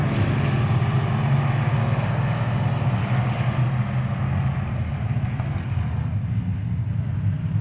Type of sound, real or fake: real